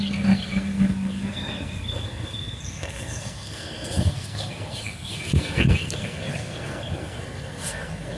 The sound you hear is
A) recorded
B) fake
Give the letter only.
B